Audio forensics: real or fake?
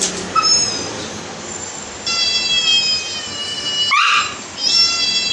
real